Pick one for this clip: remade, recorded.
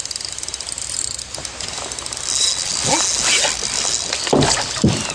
recorded